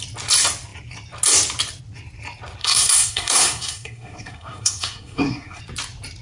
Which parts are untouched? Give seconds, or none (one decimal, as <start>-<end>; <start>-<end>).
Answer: 0.0-2.6; 5.6-6.2